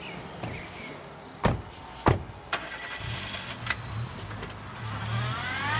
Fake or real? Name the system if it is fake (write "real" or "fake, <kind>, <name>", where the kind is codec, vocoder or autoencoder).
real